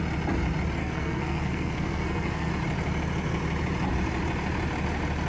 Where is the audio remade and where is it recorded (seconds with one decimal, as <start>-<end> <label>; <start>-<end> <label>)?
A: 0.0-0.8 recorded; 0.8-2.5 remade; 2.5-5.3 recorded

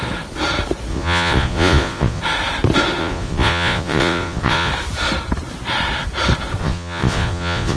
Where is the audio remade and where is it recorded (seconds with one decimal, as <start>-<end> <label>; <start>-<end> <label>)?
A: 0.0-0.9 recorded; 0.9-2.2 remade; 2.2-3.0 recorded; 3.0-4.7 remade; 4.7-6.6 recorded; 6.6-7.8 remade

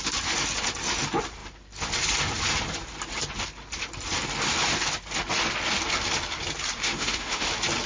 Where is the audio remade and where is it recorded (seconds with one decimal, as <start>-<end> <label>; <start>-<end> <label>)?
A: 0.0-6.8 recorded; 6.8-7.5 remade; 7.5-7.9 recorded

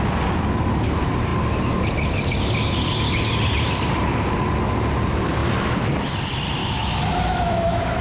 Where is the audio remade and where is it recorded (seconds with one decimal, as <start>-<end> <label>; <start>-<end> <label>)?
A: 0.0-6.6 recorded; 6.6-8.0 remade

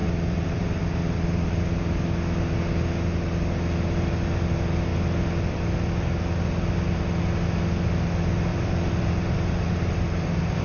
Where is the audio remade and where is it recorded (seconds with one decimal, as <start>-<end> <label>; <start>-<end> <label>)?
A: 0.0-0.8 remade; 0.8-8.5 recorded; 8.5-10.6 remade

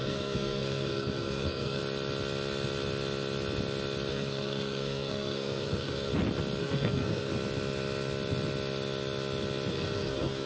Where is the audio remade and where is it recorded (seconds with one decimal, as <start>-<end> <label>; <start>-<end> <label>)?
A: 0.0-1.8 remade; 1.8-4.1 recorded; 4.1-6.1 remade; 6.1-6.6 recorded; 6.6-7.3 remade; 7.3-9.7 recorded; 9.7-10.5 remade

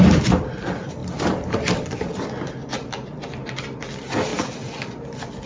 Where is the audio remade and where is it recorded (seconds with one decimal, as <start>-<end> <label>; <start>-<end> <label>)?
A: 0.0-1.0 recorded; 1.0-2.3 remade; 2.3-4.3 recorded; 4.3-4.9 remade; 4.9-5.5 recorded